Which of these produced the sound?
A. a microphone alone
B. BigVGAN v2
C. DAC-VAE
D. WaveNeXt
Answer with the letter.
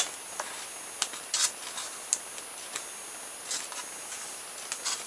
A